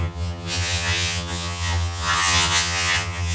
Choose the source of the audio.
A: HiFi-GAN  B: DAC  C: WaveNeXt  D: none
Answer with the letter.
A